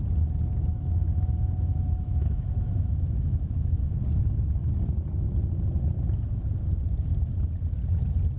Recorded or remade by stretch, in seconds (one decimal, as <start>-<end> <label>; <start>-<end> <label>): 0.0-0.7 recorded; 0.7-3.8 remade; 3.8-8.4 recorded